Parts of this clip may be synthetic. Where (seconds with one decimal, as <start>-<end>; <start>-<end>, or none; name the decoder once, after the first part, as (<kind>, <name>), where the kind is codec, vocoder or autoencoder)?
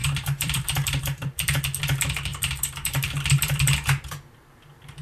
0.0-1.6 (vocoder, BigVGAN v2); 2.3-5.0